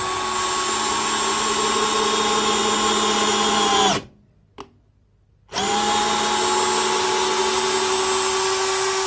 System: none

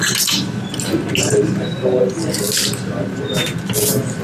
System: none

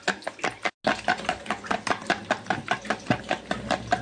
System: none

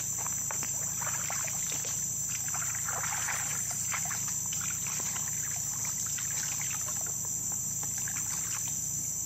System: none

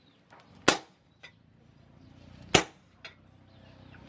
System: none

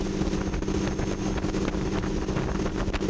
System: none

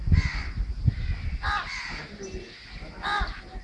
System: none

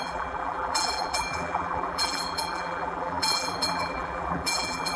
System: vocoder, BigVGAN v2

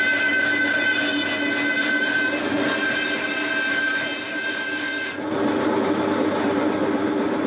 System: none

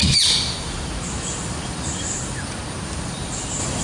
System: none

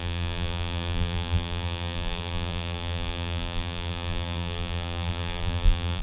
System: vocoder, BigVGAN v2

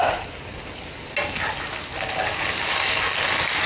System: none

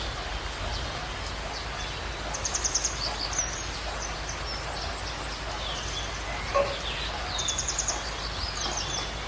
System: none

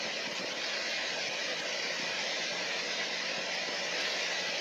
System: none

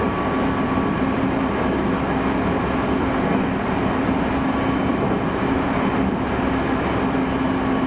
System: none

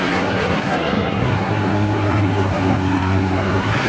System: codec, SNAC